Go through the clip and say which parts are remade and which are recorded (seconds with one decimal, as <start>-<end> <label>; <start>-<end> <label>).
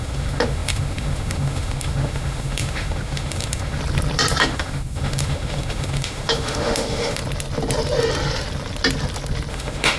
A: 0.0-3.8 remade; 3.8-4.4 recorded; 4.4-7.2 remade; 7.2-9.5 recorded; 9.5-10.0 remade